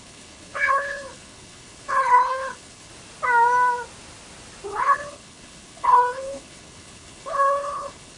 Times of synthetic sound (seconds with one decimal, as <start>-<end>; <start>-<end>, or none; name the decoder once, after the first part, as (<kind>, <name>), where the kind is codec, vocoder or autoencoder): 0.0-2.9 (codec, HILCodec); 4.7-8.2